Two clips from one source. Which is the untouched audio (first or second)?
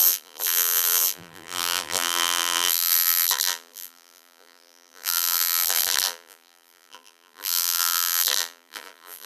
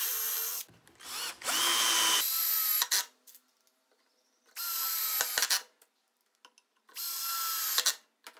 second